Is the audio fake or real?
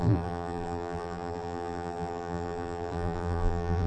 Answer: fake